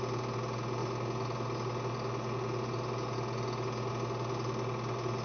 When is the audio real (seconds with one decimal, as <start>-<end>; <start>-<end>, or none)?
0.0-5.2